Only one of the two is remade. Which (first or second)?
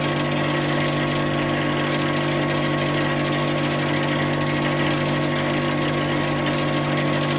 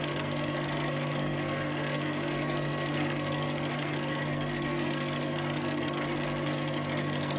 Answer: second